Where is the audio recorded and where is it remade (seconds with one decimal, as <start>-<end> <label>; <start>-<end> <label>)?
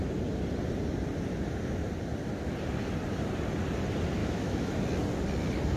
0.0-4.2 recorded; 4.2-4.8 remade; 4.8-5.8 recorded